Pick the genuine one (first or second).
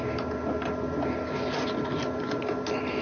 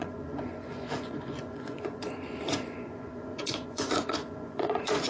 first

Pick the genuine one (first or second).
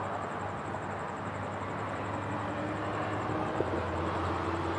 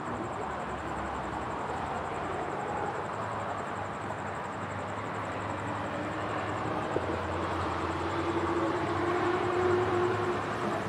first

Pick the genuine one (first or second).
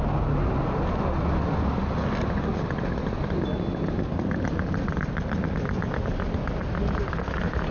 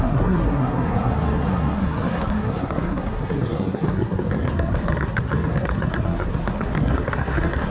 first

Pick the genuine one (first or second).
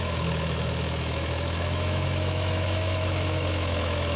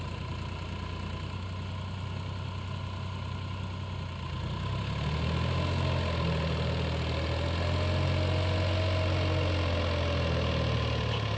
second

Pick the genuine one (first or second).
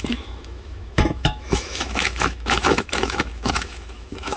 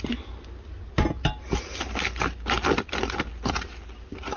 second